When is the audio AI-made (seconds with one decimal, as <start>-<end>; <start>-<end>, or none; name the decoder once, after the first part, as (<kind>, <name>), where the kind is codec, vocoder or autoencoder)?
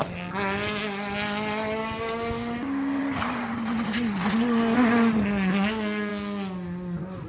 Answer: 1.8-3.0 (codec, DAC)